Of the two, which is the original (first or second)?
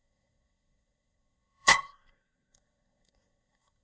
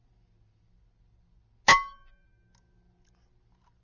second